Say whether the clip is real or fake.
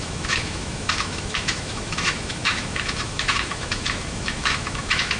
fake